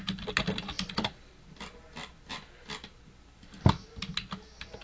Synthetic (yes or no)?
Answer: no